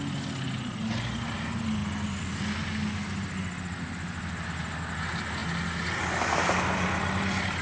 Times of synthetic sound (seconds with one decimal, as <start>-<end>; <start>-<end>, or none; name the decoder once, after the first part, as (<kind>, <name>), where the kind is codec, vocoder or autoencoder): none